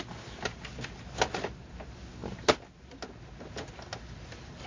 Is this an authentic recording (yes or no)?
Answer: yes